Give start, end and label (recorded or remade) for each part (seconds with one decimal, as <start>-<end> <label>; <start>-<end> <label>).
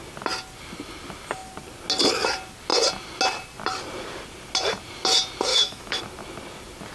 0.0-5.5 recorded; 5.5-6.0 remade; 6.0-6.9 recorded